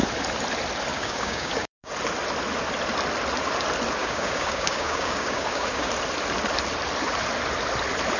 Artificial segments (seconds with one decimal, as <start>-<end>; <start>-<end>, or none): 0.9-1.9; 4.0-5.9